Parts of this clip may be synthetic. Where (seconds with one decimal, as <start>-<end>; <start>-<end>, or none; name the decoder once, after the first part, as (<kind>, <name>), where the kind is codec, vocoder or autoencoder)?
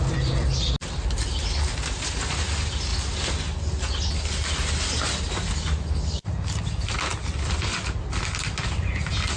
7.1-7.8 (vocoder, BigVGAN v2)